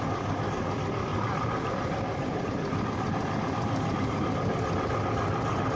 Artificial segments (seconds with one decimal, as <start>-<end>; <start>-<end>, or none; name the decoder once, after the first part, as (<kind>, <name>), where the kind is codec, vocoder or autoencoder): 1.1-2.4 (vocoder, BigVGAN v2)